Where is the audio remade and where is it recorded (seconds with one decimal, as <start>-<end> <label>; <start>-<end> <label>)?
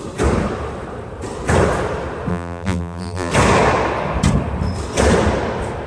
0.0-2.3 recorded; 2.3-3.3 remade; 3.3-5.9 recorded